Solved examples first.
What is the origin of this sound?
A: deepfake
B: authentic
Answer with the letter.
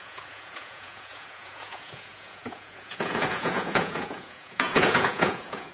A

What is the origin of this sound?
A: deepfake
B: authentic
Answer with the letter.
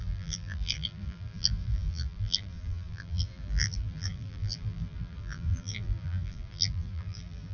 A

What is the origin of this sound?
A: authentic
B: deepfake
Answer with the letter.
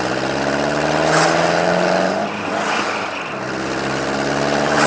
A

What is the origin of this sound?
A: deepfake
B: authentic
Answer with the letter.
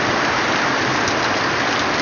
B